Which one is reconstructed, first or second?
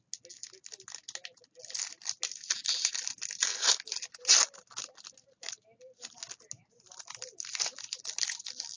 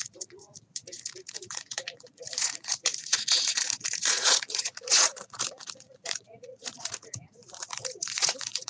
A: second